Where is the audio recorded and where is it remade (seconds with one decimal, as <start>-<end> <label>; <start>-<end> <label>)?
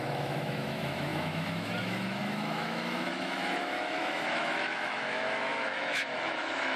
0.0-6.8 remade